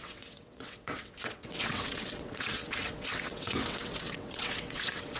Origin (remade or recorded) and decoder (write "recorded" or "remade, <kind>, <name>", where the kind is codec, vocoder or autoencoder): remade, vocoder, WaveNeXt